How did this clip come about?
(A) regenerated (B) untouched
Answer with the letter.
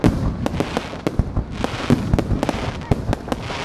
B